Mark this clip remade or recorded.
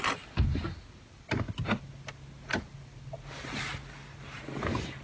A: recorded